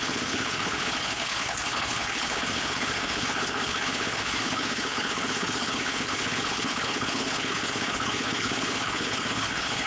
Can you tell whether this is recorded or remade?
remade